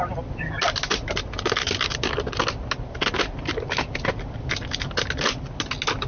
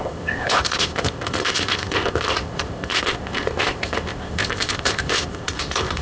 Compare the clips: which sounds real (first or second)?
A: first